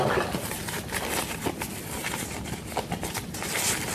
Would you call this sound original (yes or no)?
yes